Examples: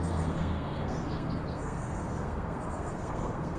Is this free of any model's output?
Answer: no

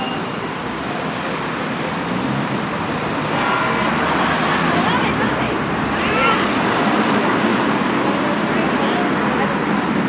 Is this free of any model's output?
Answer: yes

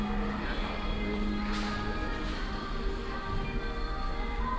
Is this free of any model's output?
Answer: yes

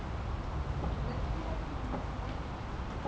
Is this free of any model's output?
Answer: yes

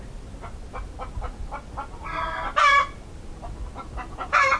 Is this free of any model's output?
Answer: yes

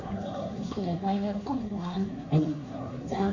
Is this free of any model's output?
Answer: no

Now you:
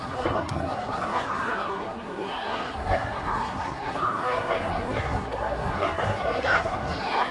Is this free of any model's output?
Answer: no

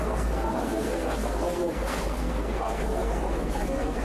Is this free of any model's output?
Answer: no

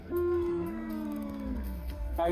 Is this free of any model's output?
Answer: no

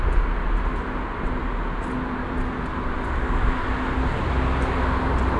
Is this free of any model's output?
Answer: yes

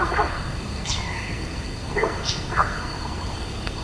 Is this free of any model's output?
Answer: no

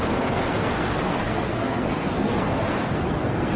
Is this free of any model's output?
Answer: no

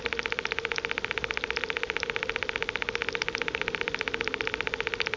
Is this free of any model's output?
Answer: yes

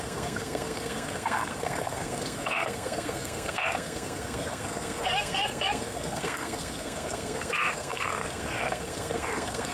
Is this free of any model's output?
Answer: no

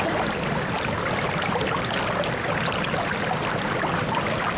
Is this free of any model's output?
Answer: yes